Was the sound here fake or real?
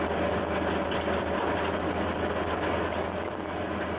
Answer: real